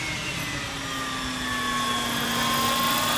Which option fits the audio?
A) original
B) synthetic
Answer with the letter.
A